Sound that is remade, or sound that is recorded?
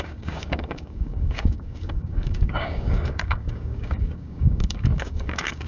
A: remade